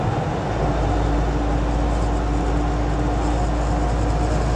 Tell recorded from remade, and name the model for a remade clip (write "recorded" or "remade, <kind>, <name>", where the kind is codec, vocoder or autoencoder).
recorded